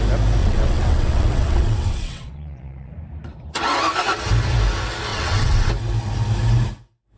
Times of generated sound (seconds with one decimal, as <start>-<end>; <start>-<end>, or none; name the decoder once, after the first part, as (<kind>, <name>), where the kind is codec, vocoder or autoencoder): 0.4-2.9 (vocoder, WaveNeXt); 5.1-5.7